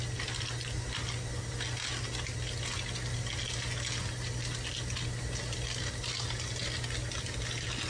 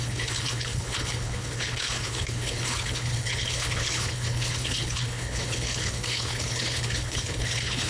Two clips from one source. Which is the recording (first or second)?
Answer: first